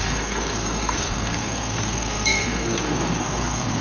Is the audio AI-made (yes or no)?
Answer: yes